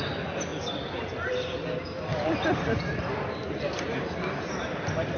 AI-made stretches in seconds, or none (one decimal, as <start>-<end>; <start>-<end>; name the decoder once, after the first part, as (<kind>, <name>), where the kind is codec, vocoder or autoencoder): none